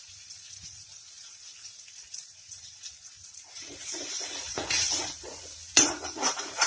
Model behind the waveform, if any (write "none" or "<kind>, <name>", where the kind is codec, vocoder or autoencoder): vocoder, Vocos